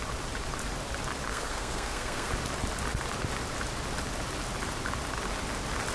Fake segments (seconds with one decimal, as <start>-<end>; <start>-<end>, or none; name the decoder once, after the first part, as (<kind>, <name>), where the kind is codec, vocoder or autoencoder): 1.3-2.3 (codec, SNAC)